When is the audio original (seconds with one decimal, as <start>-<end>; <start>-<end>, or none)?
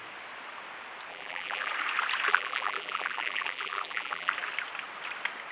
0.0-1.1; 1.7-2.3; 4.3-5.5